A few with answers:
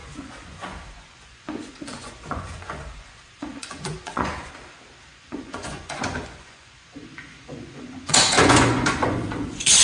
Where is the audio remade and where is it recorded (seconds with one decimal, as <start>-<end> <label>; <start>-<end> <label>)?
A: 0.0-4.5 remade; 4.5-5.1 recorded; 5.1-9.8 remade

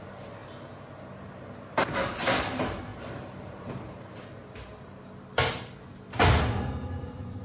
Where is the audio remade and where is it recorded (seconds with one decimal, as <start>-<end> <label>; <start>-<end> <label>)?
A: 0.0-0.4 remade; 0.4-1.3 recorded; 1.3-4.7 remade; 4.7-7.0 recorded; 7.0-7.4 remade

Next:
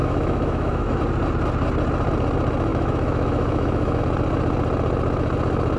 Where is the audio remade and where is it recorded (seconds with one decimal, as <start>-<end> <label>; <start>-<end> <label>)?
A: 0.0-1.0 remade; 1.0-2.7 recorded; 2.7-4.0 remade; 4.0-5.8 recorded

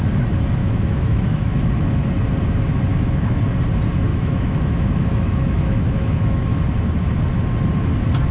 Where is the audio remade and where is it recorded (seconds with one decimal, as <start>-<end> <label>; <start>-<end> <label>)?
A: 0.0-0.6 recorded; 0.6-1.7 remade; 1.7-2.9 recorded; 2.9-3.4 remade; 3.4-4.1 recorded; 4.1-6.6 remade; 6.6-8.3 recorded

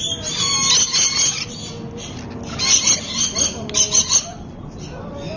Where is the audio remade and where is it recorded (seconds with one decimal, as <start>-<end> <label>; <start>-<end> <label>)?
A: 0.0-5.4 recorded

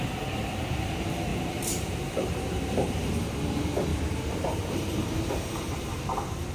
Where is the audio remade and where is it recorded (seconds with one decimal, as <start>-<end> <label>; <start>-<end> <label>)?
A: 0.0-1.3 recorded; 1.3-3.3 remade; 3.3-3.9 recorded; 3.9-5.9 remade; 5.9-6.5 recorded

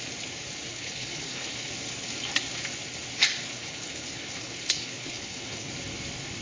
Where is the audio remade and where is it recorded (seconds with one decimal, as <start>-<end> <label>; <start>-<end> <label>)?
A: 0.0-0.7 recorded; 0.7-1.7 remade; 1.7-3.5 recorded; 3.5-5.7 remade; 5.7-6.4 recorded

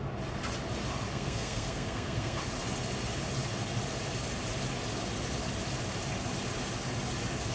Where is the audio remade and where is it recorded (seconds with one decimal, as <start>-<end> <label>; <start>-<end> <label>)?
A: 0.0-1.1 recorded; 1.1-2.4 remade; 2.4-7.5 recorded